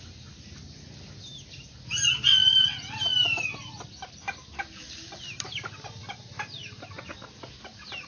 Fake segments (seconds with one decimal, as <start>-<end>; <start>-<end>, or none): none